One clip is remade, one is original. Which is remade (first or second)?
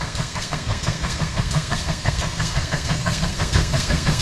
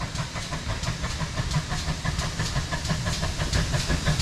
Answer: first